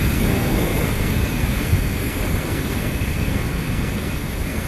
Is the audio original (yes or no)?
no